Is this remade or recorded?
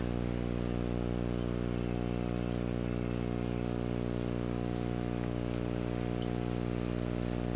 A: recorded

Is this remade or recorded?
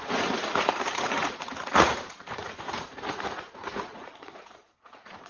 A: remade